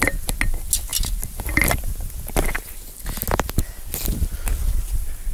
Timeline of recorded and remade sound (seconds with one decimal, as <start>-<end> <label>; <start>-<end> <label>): 0.0-5.3 recorded

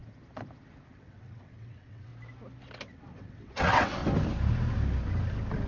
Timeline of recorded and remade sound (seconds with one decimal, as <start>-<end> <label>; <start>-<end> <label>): 0.0-0.9 recorded; 0.9-2.1 remade; 2.1-2.9 recorded; 2.9-4.0 remade; 4.0-5.7 recorded